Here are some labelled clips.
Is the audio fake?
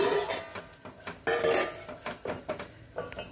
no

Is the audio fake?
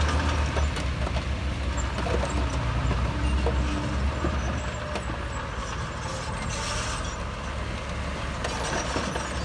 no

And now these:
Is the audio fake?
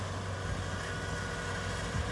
no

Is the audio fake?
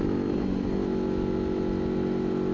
no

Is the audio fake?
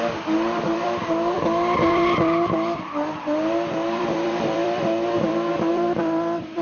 yes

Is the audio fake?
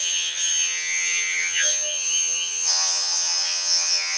yes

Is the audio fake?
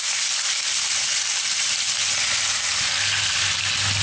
no